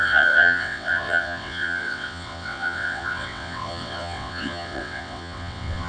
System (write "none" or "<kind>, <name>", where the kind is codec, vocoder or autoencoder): vocoder, WaveNeXt